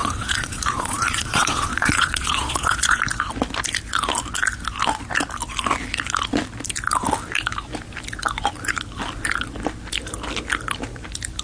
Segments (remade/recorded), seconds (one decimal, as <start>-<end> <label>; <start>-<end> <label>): 0.0-3.0 remade; 3.0-11.4 recorded